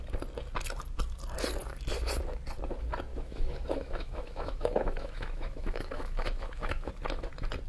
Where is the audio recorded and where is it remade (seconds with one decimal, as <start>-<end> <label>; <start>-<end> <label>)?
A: 0.0-3.1 recorded; 3.1-6.9 remade; 6.9-7.7 recorded